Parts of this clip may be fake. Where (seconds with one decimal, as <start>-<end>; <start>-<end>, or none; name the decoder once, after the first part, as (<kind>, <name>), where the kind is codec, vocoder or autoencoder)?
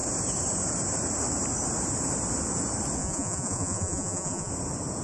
3.0-4.5 (vocoder, Vocos)